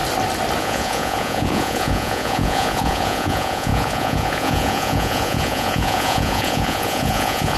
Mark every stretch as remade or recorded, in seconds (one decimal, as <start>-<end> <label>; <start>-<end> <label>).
0.0-0.6 recorded; 0.6-7.6 remade